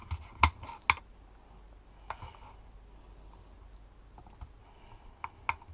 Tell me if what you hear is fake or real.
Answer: real